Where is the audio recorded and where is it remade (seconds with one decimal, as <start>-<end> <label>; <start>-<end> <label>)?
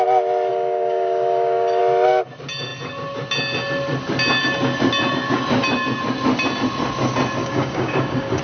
0.0-0.5 recorded; 0.5-1.8 remade; 1.8-7.4 recorded; 7.4-8.4 remade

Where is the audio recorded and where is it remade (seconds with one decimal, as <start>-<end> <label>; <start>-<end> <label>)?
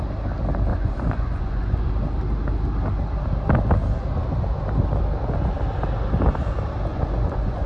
0.0-0.7 recorded; 0.7-1.9 remade; 1.9-6.9 recorded; 6.9-7.7 remade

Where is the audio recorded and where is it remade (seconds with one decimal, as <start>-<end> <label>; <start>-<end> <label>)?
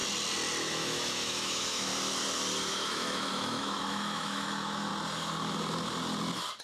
0.0-0.6 recorded; 0.6-1.9 remade; 1.9-2.6 recorded; 2.6-4.9 remade; 4.9-6.6 recorded